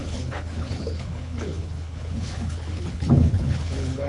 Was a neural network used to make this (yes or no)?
yes